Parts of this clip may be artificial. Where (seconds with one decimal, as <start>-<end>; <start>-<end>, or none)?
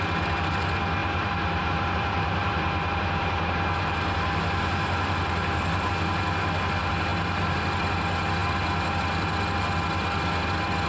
1.0-5.9; 7.1-7.6